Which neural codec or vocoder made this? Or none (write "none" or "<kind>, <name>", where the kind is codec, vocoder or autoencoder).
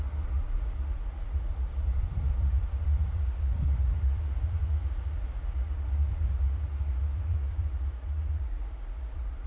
vocoder, Vocos